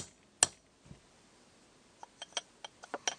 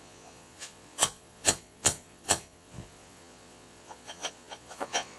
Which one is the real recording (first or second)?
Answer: first